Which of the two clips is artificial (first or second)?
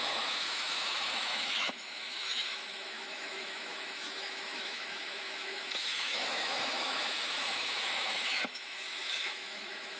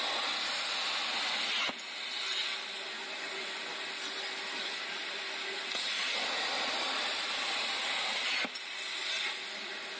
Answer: first